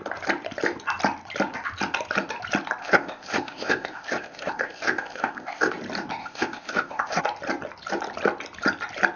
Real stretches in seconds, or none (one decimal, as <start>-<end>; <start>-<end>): 0.0-2.8; 5.7-6.2; 7.2-9.2